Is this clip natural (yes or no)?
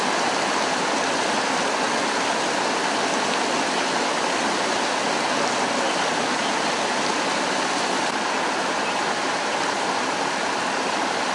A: yes